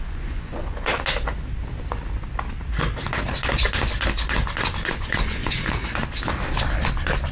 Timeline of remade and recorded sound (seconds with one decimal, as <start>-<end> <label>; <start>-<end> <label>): 0.0-0.9 remade; 0.9-4.9 recorded; 4.9-5.8 remade; 5.8-7.3 recorded